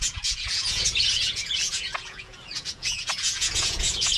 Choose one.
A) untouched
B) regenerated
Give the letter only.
B